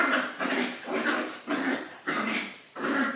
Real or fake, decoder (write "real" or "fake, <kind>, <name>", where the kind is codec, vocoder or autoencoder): fake, vocoder, BigVGAN v2